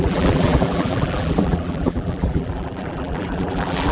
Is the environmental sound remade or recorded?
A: remade